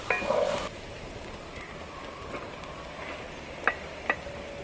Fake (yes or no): no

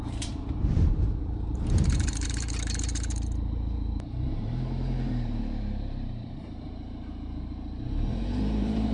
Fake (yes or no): yes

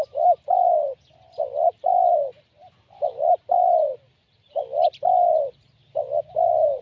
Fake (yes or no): yes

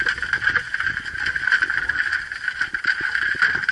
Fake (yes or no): no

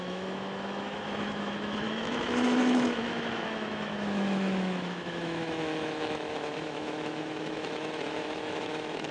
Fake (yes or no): yes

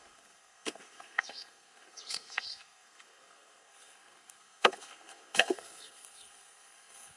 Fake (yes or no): yes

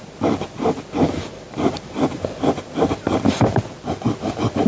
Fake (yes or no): yes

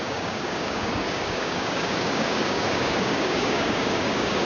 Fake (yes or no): yes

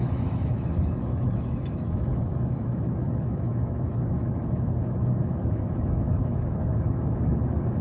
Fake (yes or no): yes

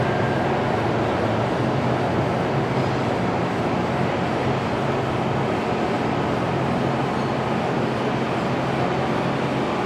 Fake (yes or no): no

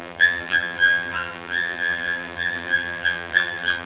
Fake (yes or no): yes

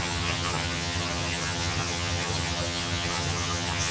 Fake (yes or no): yes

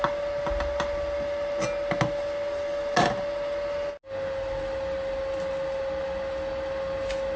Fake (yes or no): no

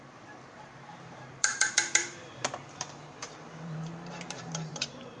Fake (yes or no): yes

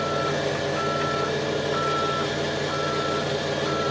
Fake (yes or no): no